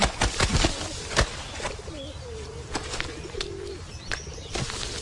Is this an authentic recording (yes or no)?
yes